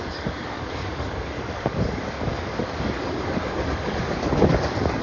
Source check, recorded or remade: remade